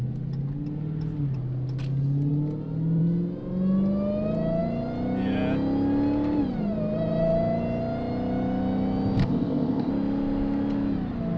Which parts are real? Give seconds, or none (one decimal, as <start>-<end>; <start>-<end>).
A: 0.0-9.2; 9.9-11.4